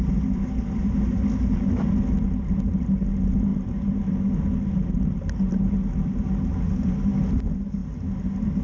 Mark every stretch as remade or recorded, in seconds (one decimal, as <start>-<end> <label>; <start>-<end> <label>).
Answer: 0.0-8.6 recorded